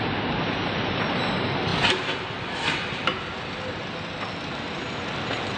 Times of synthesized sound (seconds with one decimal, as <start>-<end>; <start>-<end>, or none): none